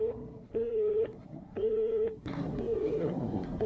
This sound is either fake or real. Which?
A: fake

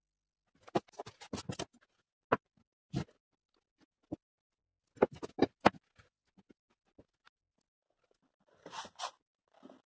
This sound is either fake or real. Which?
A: real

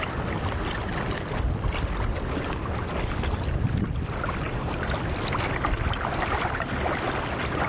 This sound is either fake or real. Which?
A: real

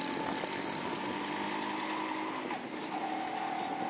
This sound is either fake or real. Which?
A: real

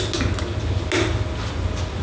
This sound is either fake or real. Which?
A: real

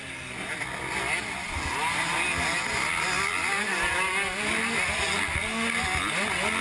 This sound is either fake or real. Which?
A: real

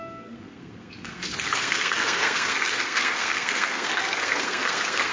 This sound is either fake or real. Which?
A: fake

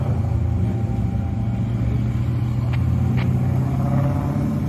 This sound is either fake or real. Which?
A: real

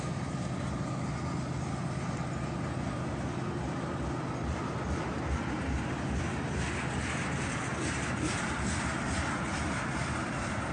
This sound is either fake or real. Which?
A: real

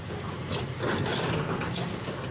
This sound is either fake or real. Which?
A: real